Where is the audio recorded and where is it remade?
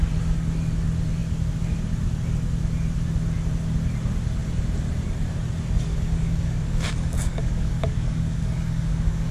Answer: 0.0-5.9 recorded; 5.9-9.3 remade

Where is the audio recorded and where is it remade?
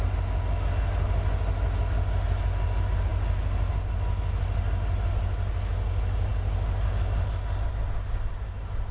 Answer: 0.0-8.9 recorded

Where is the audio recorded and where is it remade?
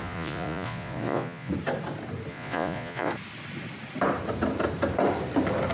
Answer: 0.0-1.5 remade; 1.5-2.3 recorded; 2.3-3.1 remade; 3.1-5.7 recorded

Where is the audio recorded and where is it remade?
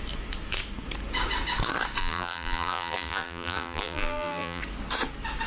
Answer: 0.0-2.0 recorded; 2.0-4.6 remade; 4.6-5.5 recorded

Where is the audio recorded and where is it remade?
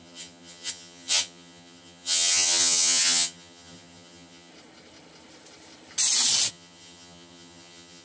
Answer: 0.0-4.5 remade; 4.5-6.5 recorded; 6.5-8.0 remade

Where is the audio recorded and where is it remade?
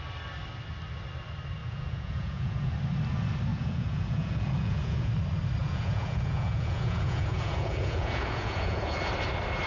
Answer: 0.0-1.6 recorded; 1.6-2.7 remade; 2.7-3.5 recorded; 3.5-5.1 remade; 5.1-5.6 recorded; 5.6-9.0 remade; 9.0-9.7 recorded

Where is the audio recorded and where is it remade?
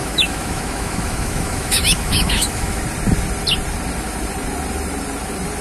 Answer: 0.0-2.8 remade; 2.8-5.6 recorded